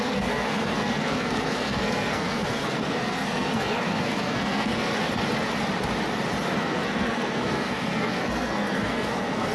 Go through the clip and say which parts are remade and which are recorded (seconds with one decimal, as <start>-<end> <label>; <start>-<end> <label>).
0.0-4.9 remade; 4.9-6.6 recorded; 6.6-9.5 remade